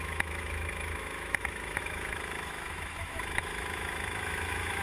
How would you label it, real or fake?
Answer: fake